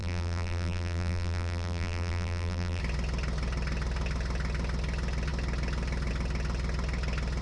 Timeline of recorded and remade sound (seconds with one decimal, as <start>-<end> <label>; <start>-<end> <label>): 0.0-2.8 remade; 2.8-7.4 recorded